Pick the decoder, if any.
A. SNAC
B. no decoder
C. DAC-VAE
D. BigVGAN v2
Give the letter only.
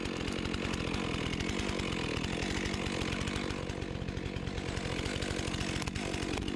B